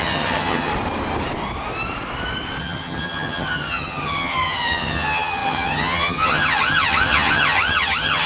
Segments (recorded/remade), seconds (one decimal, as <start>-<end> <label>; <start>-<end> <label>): 0.0-0.7 remade; 0.7-2.6 recorded; 2.6-8.3 remade

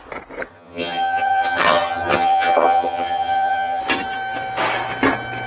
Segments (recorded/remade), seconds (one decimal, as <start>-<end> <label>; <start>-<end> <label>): 0.0-0.5 recorded; 0.5-3.8 remade; 3.8-5.5 recorded

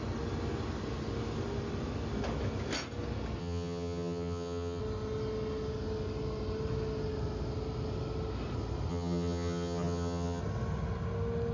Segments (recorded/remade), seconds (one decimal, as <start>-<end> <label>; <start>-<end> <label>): 0.0-3.4 recorded; 3.4-4.8 remade; 4.8-8.9 recorded; 8.9-10.4 remade; 10.4-11.5 recorded

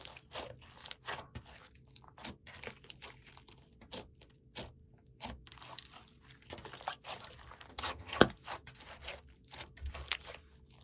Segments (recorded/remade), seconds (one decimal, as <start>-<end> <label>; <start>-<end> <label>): 0.0-7.7 recorded; 7.7-8.2 remade; 8.2-10.8 recorded

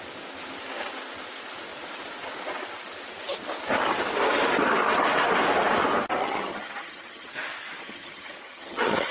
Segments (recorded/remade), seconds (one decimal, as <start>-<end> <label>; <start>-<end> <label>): 0.0-6.2 recorded; 6.2-7.3 remade; 7.3-7.8 recorded; 7.8-9.1 remade

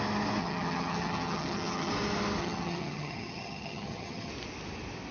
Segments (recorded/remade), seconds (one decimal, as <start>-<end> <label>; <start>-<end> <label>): 0.0-0.4 recorded; 0.4-1.9 remade; 1.9-2.4 recorded; 2.4-4.3 remade; 4.3-5.1 recorded

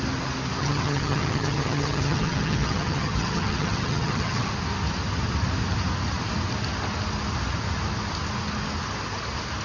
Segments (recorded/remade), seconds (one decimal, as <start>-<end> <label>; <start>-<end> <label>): 0.0-0.6 recorded; 0.6-4.5 remade; 4.5-9.6 recorded

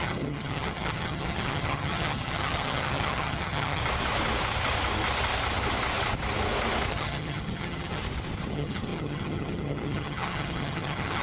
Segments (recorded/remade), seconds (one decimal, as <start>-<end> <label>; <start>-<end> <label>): 0.0-3.8 remade; 3.8-6.9 recorded; 6.9-8.0 remade; 8.0-8.5 recorded; 8.5-11.2 remade